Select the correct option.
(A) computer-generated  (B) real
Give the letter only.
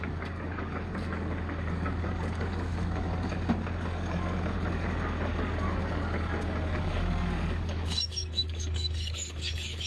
A